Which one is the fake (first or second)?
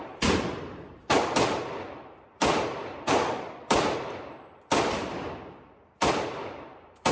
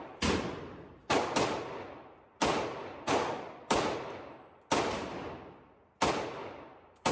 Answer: first